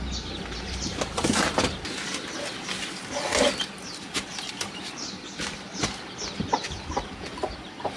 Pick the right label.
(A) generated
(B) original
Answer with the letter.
B